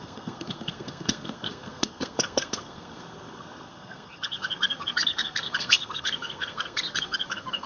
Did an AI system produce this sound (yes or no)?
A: yes